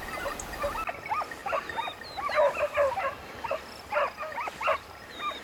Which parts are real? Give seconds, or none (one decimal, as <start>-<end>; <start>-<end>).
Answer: 0.0-1.4; 4.6-5.4